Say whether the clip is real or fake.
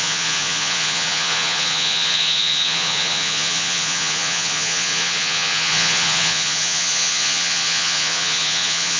fake